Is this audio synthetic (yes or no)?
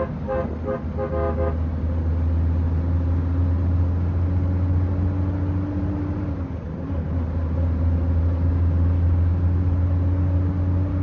no